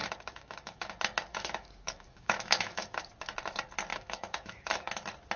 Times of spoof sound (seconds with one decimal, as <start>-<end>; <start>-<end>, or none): 0.0-0.9; 1.3-3.0; 3.9-4.9